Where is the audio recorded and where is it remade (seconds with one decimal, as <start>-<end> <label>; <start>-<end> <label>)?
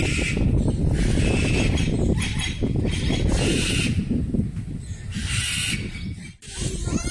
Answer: 0.0-7.1 recorded